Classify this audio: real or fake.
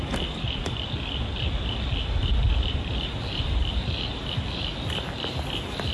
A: real